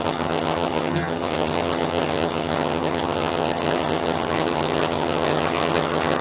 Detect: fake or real fake